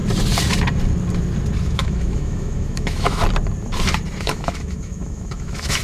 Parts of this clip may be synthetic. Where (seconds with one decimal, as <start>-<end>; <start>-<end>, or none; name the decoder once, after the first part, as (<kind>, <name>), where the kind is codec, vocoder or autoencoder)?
1.6-3.2 (autoencoder, DAC-VAE); 4.2-5.8